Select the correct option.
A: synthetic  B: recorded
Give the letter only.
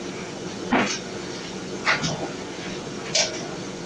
A